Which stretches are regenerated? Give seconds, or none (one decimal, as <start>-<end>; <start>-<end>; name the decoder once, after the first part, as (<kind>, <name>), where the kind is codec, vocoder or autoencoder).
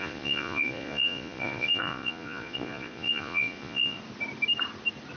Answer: 0.0-4.0 (vocoder, Vocos)